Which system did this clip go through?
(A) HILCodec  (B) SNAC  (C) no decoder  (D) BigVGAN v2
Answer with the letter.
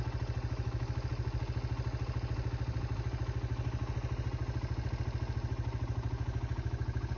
C